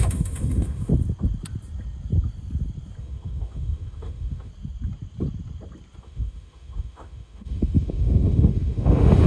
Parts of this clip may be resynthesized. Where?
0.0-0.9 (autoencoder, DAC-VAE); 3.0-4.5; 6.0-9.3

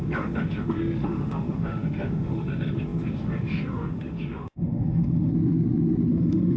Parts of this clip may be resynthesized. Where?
0.0-5.3 (autoencoder, DAC-VAE); 6.1-6.6

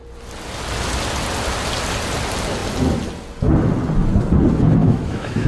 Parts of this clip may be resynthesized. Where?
4.8-5.5 (autoencoder, DAC-VAE)

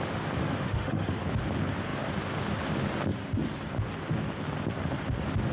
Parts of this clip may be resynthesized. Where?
0.4-1.2 (autoencoder, DAC-VAE)